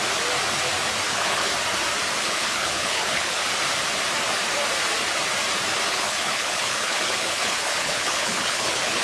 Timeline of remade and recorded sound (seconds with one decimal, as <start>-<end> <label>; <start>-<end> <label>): 0.0-1.1 recorded; 1.1-1.5 remade; 1.5-2.2 recorded; 2.2-3.4 remade; 3.4-5.9 recorded; 5.9-9.0 remade